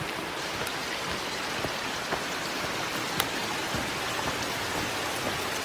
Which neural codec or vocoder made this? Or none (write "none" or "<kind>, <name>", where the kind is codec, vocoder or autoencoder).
none